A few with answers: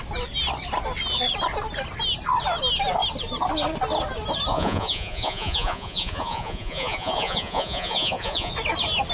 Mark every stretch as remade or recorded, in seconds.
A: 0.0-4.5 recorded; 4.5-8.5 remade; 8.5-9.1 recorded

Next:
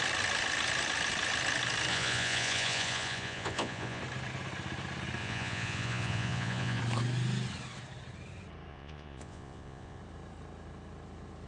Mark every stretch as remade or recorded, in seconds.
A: 0.0-1.9 recorded; 1.9-4.0 remade; 4.0-5.2 recorded; 5.2-6.8 remade; 6.8-8.7 recorded; 8.7-10.0 remade; 10.0-11.5 recorded

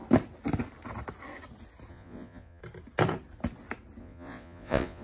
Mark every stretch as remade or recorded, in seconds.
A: 0.0-1.9 recorded; 1.9-2.6 remade; 2.6-4.0 recorded; 4.0-5.0 remade

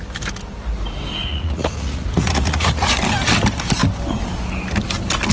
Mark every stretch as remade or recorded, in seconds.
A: 0.0-1.3 recorded; 1.3-3.0 remade; 3.0-5.3 recorded

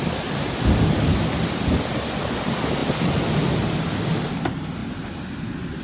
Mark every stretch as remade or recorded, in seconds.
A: 0.0-5.8 recorded